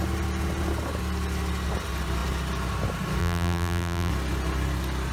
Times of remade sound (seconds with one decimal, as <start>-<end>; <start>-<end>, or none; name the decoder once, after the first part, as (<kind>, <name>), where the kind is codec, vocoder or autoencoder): 3.2-4.1 (vocoder, BigVGAN v2)